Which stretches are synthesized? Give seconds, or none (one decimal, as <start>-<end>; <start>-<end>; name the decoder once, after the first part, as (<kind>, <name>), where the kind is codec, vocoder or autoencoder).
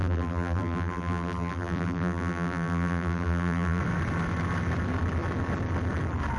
0.0-3.8 (vocoder, BigVGAN v2)